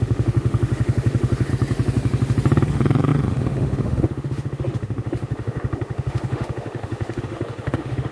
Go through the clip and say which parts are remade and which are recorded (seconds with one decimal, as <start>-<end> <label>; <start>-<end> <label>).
0.0-1.5 remade; 1.5-2.7 recorded; 2.7-8.1 remade